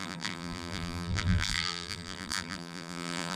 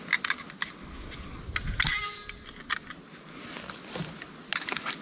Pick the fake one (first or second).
first